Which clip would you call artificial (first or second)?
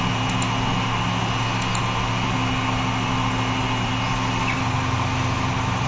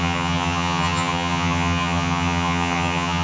second